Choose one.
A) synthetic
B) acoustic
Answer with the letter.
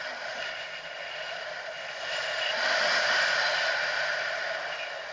B